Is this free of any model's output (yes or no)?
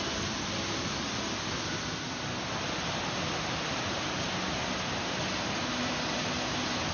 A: yes